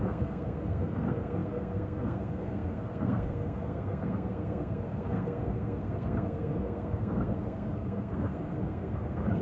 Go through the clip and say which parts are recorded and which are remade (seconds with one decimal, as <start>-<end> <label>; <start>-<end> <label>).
0.0-9.4 remade